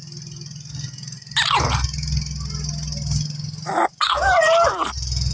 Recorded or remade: recorded